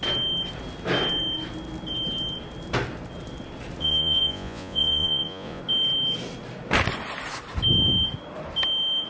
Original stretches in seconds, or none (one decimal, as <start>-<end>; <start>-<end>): 0.0-3.8; 5.6-9.1